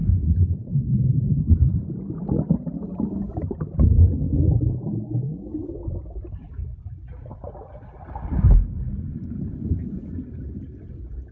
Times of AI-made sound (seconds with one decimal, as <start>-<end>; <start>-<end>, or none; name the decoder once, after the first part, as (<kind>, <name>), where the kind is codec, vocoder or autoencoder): 0.0-2.0 (vocoder, BigVGAN v2)